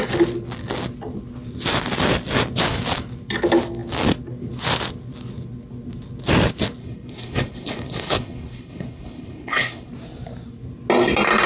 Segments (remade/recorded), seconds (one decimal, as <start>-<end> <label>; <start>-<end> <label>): 0.0-6.8 recorded; 6.8-9.9 remade; 9.9-11.5 recorded